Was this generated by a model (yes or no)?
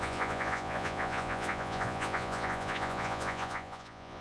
yes